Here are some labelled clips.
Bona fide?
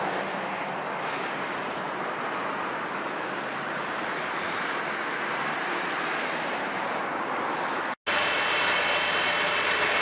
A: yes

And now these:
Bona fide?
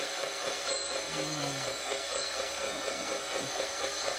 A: no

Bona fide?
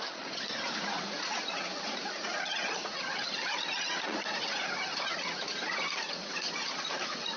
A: no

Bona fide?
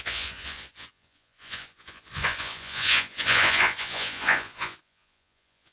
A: no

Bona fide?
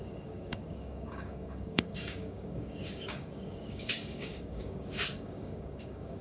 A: no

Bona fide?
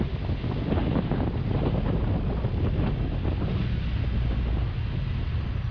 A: yes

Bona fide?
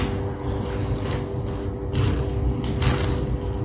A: yes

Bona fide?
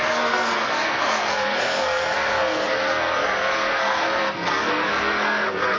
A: no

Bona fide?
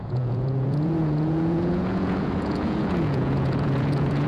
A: no